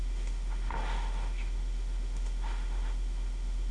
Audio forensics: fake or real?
fake